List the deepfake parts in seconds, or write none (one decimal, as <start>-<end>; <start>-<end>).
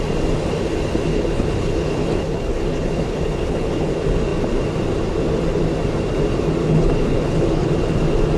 1.1-3.9; 6.6-7.7